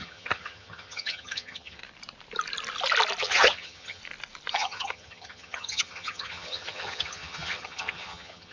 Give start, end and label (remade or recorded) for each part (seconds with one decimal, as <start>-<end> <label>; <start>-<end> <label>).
0.0-1.8 remade; 1.8-3.2 recorded; 3.2-4.0 remade; 4.0-4.5 recorded; 4.5-8.5 remade